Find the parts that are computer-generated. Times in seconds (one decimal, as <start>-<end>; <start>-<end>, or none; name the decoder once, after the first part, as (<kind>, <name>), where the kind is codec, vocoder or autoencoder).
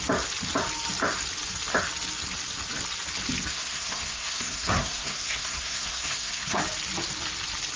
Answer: 3.5-6.6 (codec, SNAC)